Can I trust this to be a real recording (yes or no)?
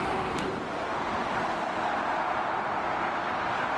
yes